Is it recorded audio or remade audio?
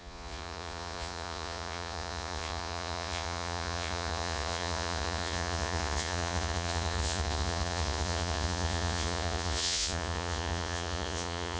remade